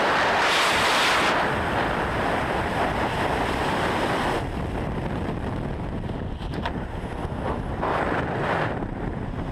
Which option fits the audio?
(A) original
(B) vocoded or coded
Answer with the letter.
B